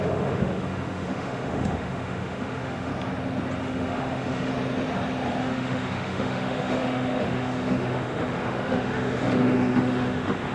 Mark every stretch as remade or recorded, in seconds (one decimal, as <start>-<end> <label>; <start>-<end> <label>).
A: 0.0-2.9 remade; 2.9-3.6 recorded; 3.6-4.5 remade; 4.5-5.4 recorded; 5.4-10.5 remade